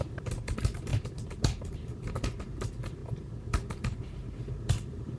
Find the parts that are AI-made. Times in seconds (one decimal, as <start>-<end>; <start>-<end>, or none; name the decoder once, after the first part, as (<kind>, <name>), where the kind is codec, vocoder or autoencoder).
0.0-0.9 (vocoder, BigVGAN v2); 2.4-3.0; 4.5-5.2